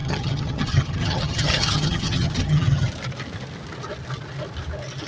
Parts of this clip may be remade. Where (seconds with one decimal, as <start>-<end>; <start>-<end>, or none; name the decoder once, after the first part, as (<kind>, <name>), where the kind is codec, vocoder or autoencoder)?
0.0-2.9 (vocoder, HiFi-GAN)